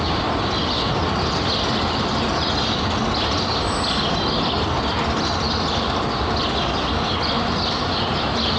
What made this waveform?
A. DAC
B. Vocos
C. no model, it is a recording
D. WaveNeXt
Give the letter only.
C